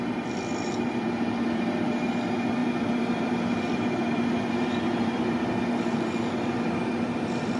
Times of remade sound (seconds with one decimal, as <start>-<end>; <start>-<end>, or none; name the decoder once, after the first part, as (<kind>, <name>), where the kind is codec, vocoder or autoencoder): 0.0-7.6 (vocoder, BigVGAN v2)